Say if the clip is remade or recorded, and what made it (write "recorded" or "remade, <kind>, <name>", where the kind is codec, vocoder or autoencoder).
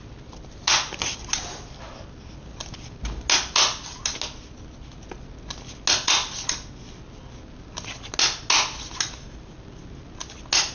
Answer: recorded